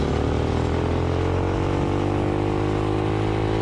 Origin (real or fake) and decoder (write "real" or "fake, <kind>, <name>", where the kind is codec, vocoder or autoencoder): real